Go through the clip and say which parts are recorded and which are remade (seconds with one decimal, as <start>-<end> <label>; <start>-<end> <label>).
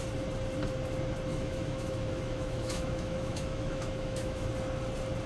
0.0-1.3 recorded; 1.3-4.5 remade; 4.5-5.3 recorded